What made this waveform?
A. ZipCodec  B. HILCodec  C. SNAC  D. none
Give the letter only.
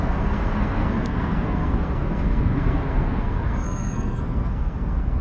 C